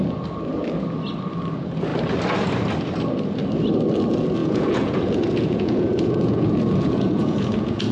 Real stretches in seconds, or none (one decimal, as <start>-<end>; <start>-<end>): 0.0-4.4